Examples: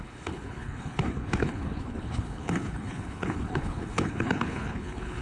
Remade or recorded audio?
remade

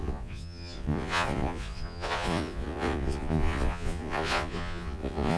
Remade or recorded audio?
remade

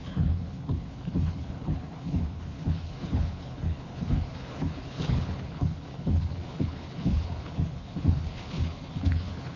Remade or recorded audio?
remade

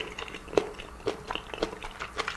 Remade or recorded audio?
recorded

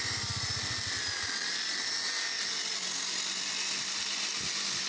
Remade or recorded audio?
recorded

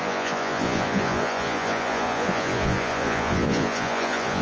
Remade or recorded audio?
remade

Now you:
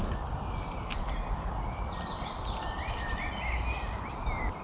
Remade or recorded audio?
recorded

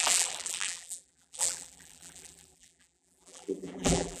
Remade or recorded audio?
remade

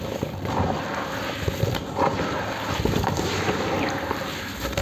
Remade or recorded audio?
recorded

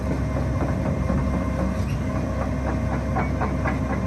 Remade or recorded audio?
recorded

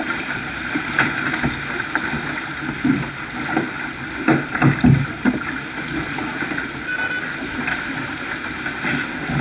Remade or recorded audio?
recorded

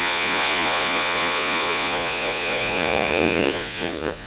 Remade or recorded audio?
remade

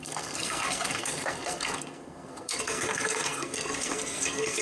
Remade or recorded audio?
remade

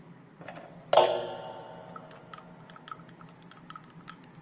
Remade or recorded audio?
recorded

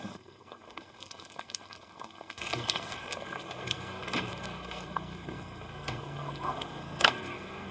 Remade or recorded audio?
remade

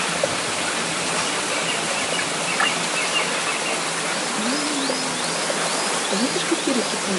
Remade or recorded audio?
recorded